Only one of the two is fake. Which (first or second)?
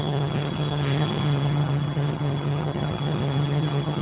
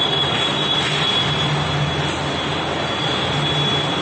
first